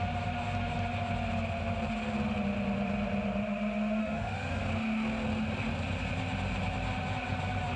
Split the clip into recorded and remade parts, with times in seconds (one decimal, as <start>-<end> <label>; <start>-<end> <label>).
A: 0.0-4.0 recorded; 4.0-4.5 remade; 4.5-7.8 recorded